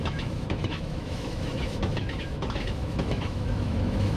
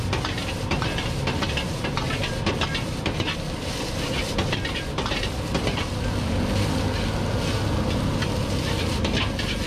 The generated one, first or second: first